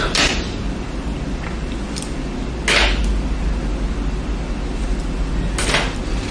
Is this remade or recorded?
recorded